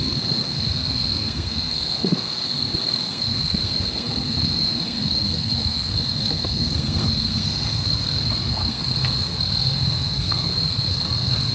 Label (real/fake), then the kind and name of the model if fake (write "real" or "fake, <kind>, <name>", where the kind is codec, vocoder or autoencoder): fake, codec, SNAC